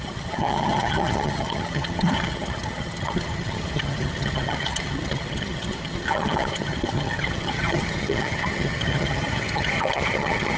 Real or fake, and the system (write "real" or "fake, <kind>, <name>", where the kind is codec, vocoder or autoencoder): fake, vocoder, HiFi-GAN